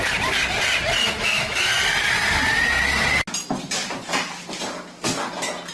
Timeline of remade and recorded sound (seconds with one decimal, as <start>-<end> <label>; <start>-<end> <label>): 0.0-1.0 recorded; 1.0-1.6 remade; 1.6-5.7 recorded